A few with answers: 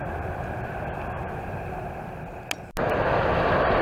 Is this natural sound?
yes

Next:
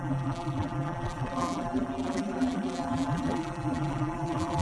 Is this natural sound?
no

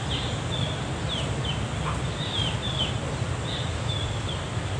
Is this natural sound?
yes